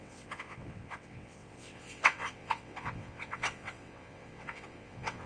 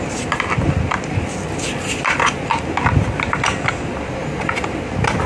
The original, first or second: second